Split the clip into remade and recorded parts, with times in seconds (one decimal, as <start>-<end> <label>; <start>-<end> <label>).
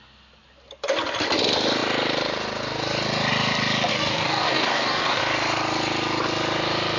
0.0-3.9 recorded; 3.9-5.2 remade; 5.2-7.0 recorded